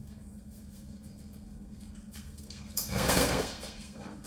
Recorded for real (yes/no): no